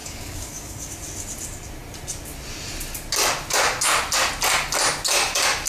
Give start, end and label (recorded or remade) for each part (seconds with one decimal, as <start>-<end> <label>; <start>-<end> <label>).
0.0-0.9 remade; 0.9-5.7 recorded